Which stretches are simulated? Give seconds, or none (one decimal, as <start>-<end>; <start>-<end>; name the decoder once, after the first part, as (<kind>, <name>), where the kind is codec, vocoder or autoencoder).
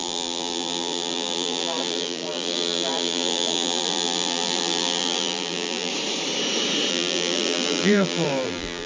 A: 0.0-5.9 (vocoder, BigVGAN v2); 6.9-8.9